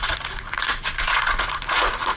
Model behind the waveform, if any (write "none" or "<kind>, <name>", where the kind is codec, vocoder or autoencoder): vocoder, Vocos